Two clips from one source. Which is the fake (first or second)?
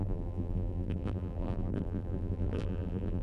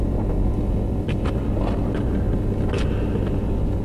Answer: first